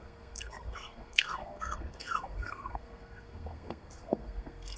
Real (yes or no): no